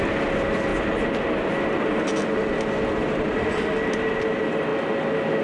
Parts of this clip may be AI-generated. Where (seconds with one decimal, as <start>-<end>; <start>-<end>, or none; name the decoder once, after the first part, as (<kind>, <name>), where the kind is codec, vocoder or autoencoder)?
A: none